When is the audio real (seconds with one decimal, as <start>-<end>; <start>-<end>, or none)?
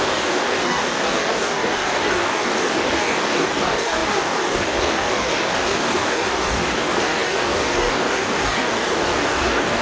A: none